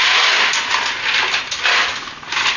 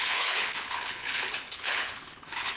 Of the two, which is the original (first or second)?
first